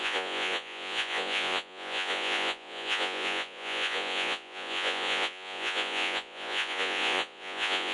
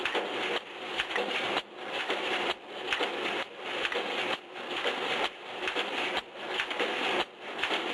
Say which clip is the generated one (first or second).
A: first